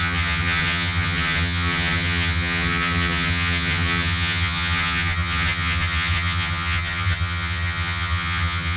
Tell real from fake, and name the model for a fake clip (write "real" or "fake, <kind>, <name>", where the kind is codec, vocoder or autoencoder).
fake, vocoder, HiFi-GAN